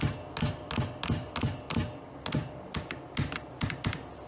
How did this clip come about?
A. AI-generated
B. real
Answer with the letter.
B